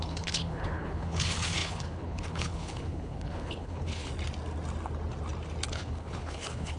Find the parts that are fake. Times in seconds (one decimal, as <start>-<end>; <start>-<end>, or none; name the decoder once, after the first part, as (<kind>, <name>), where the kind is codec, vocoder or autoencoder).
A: 0.0-4.1 (codec, HILCodec); 5.7-6.8